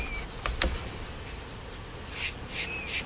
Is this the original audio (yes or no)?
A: yes